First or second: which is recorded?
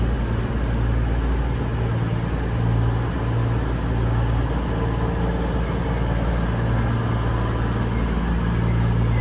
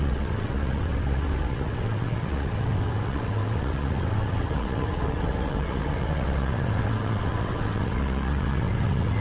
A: first